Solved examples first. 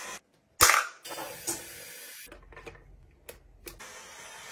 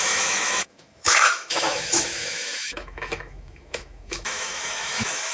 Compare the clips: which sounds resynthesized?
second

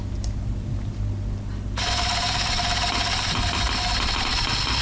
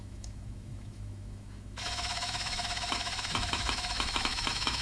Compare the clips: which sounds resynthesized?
second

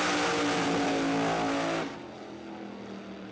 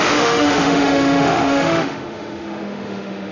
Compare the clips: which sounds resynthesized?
second